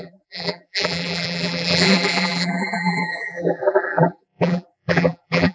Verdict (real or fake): fake